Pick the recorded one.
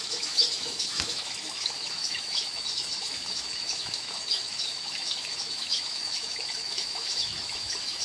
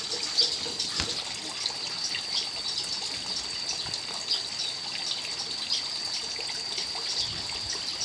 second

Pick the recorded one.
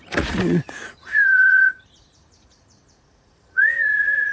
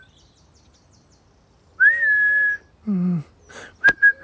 second